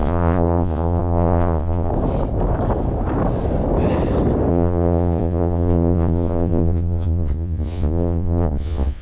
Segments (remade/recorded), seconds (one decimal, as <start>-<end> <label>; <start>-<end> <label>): 0.0-1.9 remade; 1.9-4.5 recorded; 4.5-9.0 remade